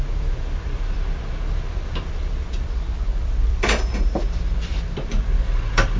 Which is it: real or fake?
fake